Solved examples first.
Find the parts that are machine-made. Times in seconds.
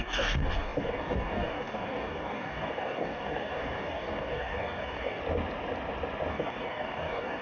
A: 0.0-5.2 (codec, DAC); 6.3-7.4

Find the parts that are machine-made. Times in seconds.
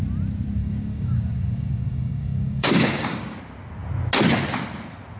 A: 0.6-3.4 (codec, DAC)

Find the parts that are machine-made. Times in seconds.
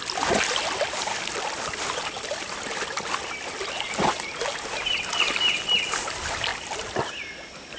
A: none